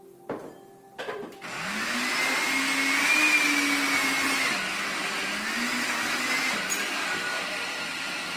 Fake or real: real